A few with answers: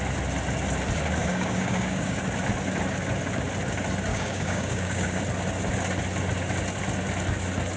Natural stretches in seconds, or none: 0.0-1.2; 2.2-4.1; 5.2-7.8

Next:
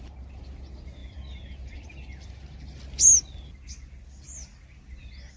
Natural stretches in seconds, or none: 0.0-5.4

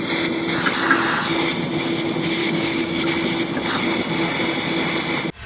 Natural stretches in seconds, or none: 0.0-2.4; 3.0-5.5

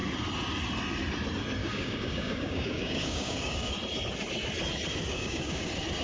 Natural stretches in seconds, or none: 0.0-1.6; 3.7-5.1; 5.6-6.0

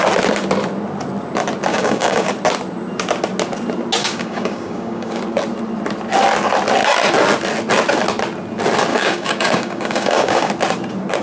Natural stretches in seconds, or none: 0.0-1.7; 2.3-4.0; 5.2-8.9; 10.5-11.2

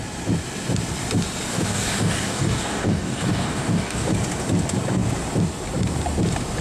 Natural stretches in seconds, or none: 0.0-1.5; 4.1-6.6

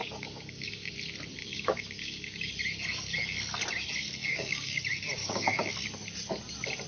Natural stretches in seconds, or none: 0.9-1.4; 2.5-4.2; 4.8-5.2; 5.7-6.9